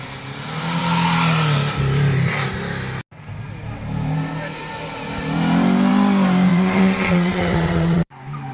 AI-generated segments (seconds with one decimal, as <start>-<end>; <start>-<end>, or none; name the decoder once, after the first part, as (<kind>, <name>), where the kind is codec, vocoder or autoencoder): 6.5-8.1 (vocoder, WaveNeXt)